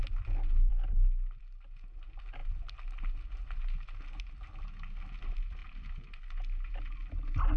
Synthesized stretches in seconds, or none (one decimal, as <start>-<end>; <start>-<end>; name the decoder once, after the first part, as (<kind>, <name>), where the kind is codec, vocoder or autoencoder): none